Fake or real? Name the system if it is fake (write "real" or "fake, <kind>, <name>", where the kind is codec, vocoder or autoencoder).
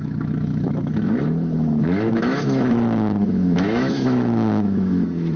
fake, autoencoder, DAC-VAE